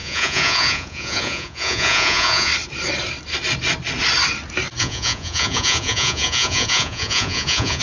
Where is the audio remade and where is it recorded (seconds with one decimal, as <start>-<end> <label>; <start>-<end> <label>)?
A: 0.0-2.5 remade; 2.5-4.8 recorded; 4.8-7.8 remade